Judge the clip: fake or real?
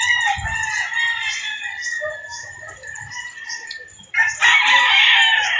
real